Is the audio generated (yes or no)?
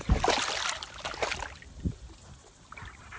no